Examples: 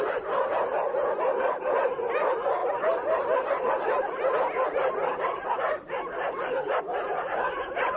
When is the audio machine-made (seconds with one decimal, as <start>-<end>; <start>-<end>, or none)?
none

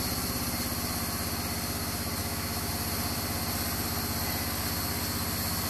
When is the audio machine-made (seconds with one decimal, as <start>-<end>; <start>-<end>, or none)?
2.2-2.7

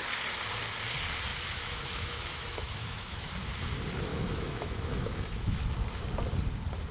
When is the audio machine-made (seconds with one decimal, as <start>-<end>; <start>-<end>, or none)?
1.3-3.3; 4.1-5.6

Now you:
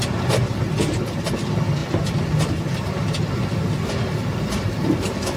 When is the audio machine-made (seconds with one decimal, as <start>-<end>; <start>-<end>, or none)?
none

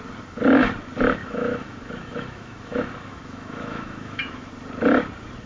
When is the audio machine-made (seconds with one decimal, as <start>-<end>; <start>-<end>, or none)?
1.2-4.5

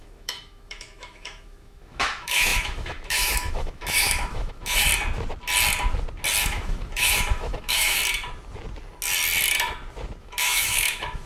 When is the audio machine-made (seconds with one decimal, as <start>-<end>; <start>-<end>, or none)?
0.0-4.9; 6.4-8.0; 10.2-11.3